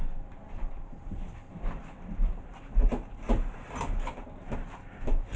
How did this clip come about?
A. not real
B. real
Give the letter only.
A